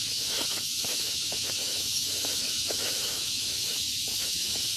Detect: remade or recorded remade